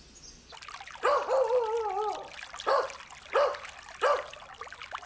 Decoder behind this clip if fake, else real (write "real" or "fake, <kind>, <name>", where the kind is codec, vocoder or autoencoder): real